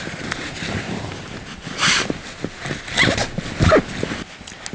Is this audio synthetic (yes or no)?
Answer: no